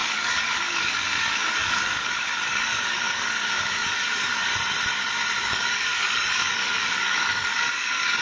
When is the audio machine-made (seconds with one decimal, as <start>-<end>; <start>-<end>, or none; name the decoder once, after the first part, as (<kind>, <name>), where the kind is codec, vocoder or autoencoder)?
0.0-4.5 (codec, DAC); 5.4-8.2

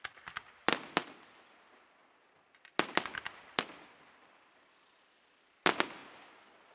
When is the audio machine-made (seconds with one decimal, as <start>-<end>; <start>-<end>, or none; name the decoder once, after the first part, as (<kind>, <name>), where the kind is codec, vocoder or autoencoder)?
none

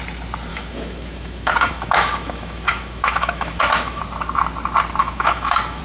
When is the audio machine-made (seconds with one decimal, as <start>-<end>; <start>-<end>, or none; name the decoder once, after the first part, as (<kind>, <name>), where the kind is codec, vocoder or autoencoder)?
0.5-4.0 (autoencoder, DAC-VAE); 5.0-5.8

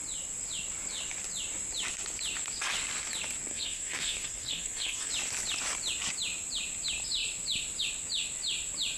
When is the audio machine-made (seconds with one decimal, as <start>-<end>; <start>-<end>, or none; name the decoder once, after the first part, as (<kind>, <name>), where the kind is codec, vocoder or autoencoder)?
3.5-5.1 (codec, SNAC)